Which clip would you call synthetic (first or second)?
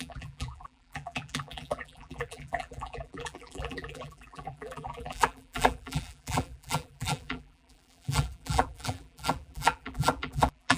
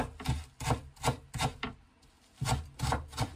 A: first